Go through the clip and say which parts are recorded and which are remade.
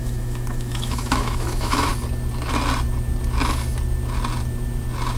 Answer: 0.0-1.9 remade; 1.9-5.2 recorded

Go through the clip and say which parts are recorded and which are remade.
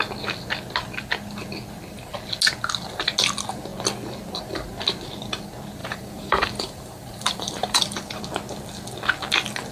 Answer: 0.0-5.8 recorded; 5.8-8.2 remade; 8.2-9.7 recorded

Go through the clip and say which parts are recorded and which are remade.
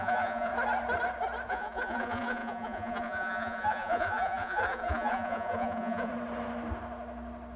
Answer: 0.0-0.5 remade; 0.5-1.5 recorded; 1.5-6.1 remade; 6.1-7.6 recorded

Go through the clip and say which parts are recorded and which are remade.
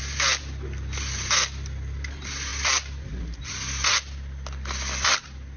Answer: 0.0-5.6 recorded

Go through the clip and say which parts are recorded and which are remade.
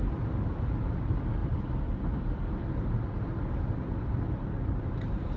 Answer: 0.0-5.4 recorded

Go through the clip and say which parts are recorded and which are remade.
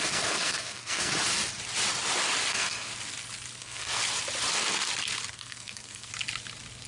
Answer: 0.0-1.1 remade; 1.1-2.5 recorded; 2.5-2.9 remade; 2.9-3.6 recorded; 3.6-4.0 remade; 4.0-5.3 recorded; 5.3-6.1 remade; 6.1-6.9 recorded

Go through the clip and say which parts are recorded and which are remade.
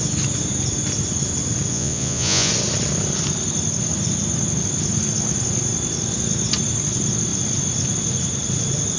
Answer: 0.0-1.7 recorded; 1.7-2.5 remade; 2.5-9.0 recorded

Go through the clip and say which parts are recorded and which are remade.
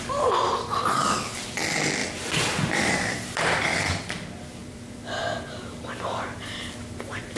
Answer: 0.0-2.0 recorded; 2.0-3.9 remade; 3.9-4.6 recorded; 4.6-5.2 remade; 5.2-7.4 recorded